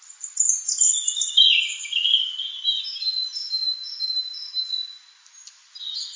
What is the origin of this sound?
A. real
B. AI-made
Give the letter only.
A